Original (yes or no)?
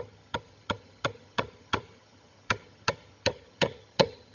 no